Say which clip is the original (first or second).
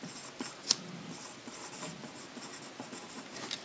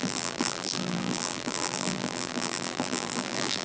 first